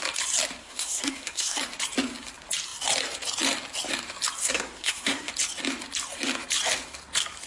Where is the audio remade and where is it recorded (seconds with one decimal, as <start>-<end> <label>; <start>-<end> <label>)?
0.0-0.6 recorded; 0.6-1.6 remade; 1.6-4.4 recorded; 4.4-5.3 remade; 5.3-7.5 recorded